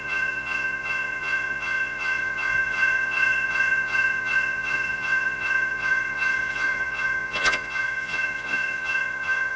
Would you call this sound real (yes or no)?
no